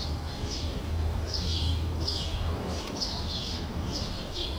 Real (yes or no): no